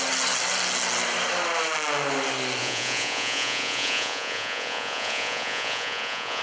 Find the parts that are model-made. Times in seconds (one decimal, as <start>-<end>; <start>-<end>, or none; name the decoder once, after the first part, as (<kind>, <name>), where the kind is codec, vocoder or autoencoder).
2.6-6.4 (vocoder, Vocos)